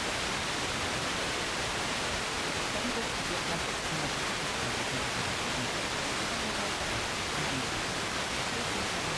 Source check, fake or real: real